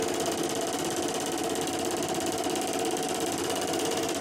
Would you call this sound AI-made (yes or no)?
no